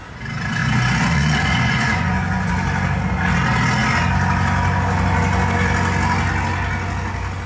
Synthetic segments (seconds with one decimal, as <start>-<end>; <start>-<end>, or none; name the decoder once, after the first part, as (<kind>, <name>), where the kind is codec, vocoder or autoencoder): 0.6-2.5 (vocoder, Vocos)